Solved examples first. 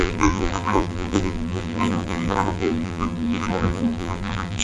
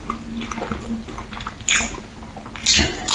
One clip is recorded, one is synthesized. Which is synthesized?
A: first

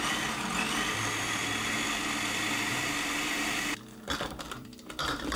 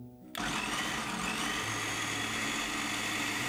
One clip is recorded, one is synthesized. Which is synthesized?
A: first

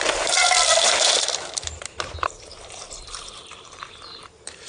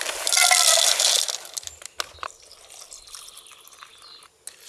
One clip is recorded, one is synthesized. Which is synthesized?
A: first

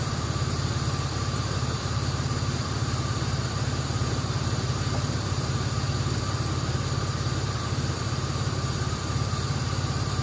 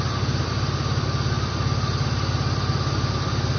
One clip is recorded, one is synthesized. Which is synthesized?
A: first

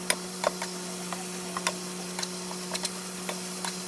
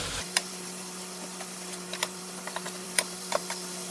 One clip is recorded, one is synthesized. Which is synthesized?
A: second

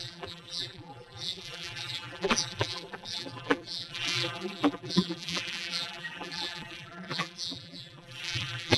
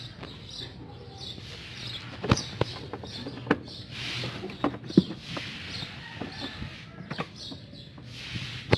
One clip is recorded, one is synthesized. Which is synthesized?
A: first